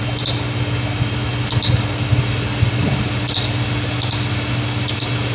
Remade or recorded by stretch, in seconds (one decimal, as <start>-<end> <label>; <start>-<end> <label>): 0.0-5.3 recorded